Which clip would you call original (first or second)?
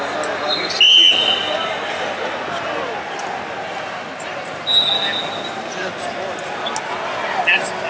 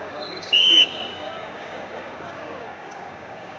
first